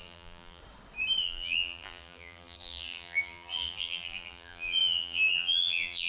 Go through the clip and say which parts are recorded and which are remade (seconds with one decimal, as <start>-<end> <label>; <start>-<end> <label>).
0.0-0.6 remade; 0.6-1.2 recorded; 1.2-6.1 remade